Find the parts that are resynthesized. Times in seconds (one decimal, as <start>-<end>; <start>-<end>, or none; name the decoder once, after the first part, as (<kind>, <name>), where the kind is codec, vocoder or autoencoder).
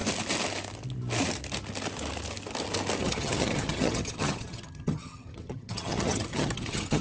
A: 3.0-7.0 (vocoder, HiFi-GAN)